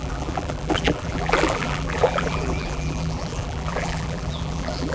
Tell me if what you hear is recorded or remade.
remade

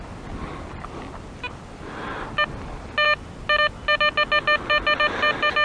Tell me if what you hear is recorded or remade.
recorded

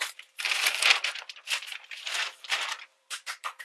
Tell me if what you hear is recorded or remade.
remade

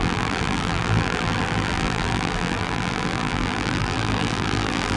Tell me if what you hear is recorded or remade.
remade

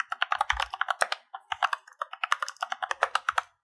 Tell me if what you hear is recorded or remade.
recorded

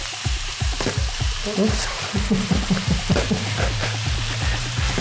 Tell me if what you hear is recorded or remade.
remade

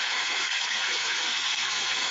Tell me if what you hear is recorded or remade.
remade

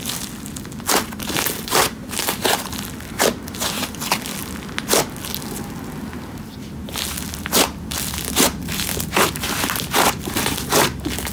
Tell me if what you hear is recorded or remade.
recorded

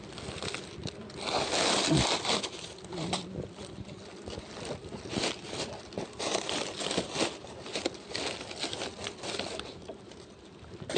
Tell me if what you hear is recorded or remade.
recorded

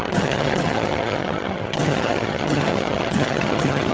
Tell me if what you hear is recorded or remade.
remade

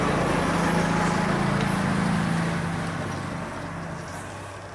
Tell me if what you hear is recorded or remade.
recorded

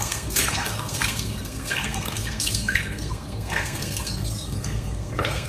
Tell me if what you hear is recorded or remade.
remade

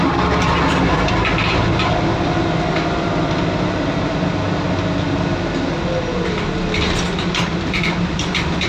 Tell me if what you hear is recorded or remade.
recorded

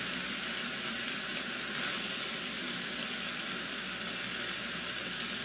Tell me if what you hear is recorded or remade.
recorded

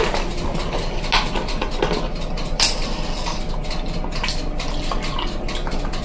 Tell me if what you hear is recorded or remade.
recorded